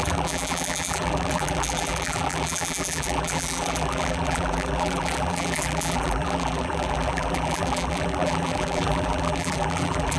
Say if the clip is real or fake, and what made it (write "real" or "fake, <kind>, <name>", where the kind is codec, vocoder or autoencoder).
fake, vocoder, BigVGAN v2